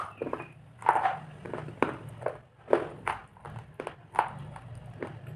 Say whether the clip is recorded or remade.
recorded